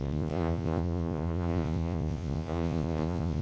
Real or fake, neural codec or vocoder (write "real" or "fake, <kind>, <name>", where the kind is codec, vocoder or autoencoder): fake, vocoder, Vocos